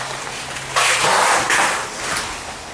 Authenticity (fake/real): real